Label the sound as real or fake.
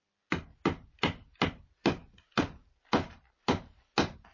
real